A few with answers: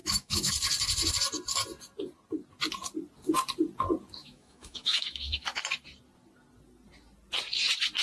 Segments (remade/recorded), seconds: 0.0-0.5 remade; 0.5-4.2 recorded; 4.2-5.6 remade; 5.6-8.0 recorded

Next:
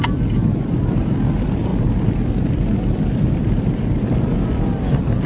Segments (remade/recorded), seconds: 0.0-5.3 recorded

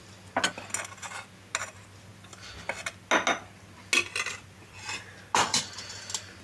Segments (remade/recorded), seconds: 0.0-6.4 recorded

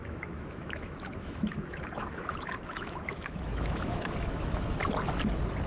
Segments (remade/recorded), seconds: 0.0-4.8 remade; 4.8-5.7 recorded

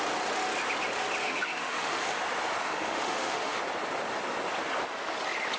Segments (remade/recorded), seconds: 0.0-1.2 recorded; 1.2-2.2 remade; 2.2-2.6 recorded; 2.6-3.6 remade; 3.6-5.6 recorded

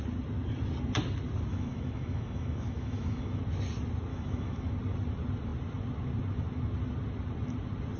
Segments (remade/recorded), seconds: 0.0-1.5 recorded; 1.5-3.4 remade; 3.4-4.1 recorded; 4.1-4.7 remade; 4.7-8.0 recorded

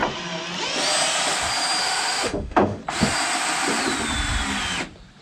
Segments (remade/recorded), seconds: 0.0-1.8 recorded; 1.8-2.8 remade; 2.8-5.2 recorded